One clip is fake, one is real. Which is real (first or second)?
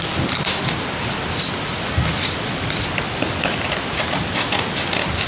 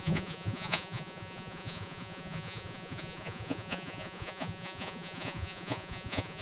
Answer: first